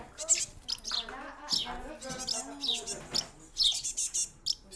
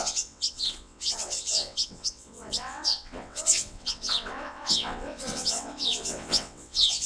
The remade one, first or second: second